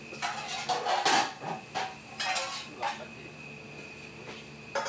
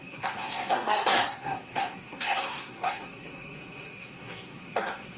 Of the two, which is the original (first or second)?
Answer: first